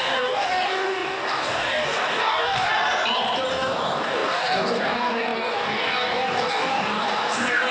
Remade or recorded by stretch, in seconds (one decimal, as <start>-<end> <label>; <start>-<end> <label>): 0.0-2.7 remade; 2.7-3.5 recorded; 3.5-7.7 remade